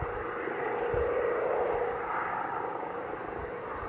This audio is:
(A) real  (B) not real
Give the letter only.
A